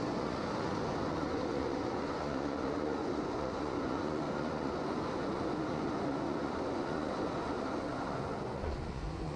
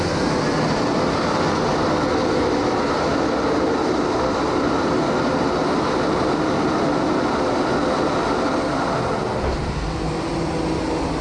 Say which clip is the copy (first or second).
first